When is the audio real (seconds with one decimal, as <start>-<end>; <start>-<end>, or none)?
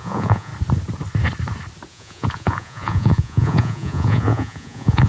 0.5-1.9